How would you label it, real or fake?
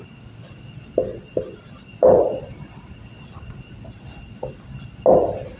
real